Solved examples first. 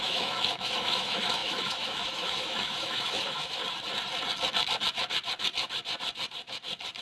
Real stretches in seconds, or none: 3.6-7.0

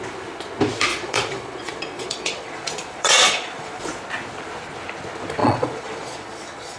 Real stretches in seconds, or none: 0.0-0.9; 3.8-5.4

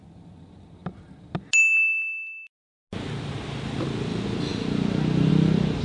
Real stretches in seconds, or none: 0.0-5.8

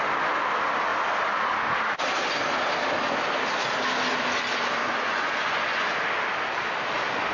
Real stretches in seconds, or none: 0.0-4.8; 6.0-7.3

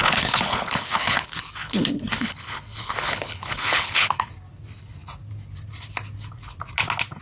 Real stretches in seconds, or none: 4.3-7.2

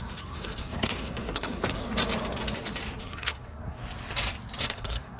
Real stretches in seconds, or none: 1.8-3.0; 3.8-4.6

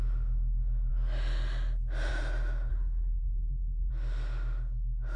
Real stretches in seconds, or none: 0.0-2.7; 3.9-5.2

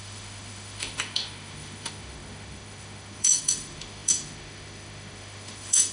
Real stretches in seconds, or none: none